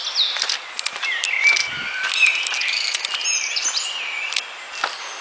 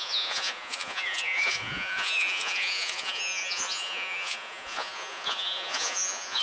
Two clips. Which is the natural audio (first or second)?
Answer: first